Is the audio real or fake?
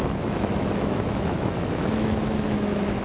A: fake